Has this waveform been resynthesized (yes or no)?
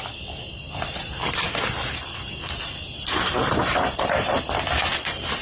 no